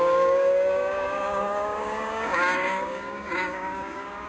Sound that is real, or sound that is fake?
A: fake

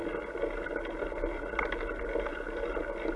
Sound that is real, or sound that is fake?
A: real